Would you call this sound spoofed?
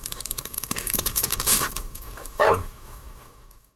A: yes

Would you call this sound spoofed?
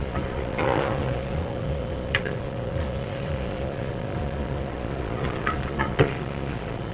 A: yes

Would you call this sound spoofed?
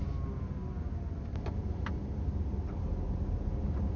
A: no